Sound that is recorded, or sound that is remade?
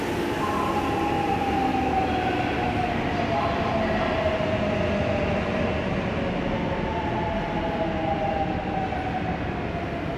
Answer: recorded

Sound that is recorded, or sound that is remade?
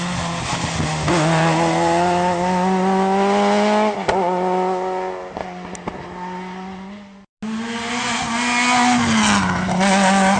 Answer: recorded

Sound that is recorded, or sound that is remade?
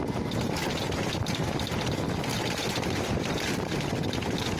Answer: recorded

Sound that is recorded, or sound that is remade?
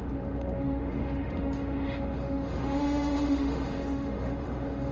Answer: remade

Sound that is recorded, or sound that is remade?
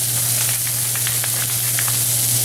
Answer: recorded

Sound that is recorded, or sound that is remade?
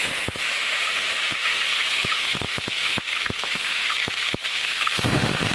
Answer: remade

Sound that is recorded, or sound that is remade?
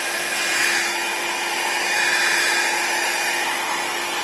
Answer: recorded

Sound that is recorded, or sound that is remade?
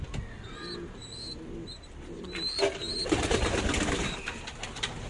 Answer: recorded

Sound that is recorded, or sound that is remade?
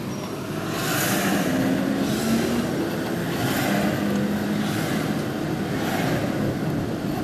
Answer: recorded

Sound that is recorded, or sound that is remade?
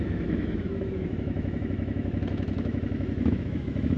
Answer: remade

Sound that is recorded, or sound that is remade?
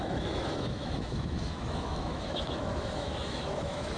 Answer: remade